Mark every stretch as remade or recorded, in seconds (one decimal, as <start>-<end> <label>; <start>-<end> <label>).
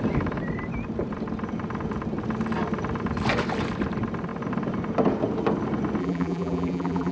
0.0-6.0 recorded; 6.0-7.1 remade